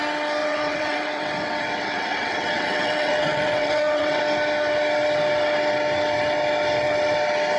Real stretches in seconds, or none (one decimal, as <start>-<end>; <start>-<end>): 0.0-0.4; 4.2-7.6